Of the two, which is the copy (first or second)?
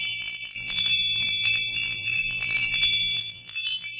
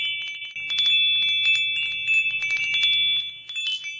first